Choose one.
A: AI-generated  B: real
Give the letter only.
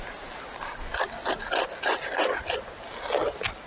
B